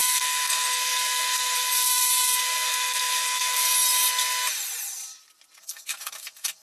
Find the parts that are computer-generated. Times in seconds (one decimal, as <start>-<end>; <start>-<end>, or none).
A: 0.0-3.7; 5.6-6.6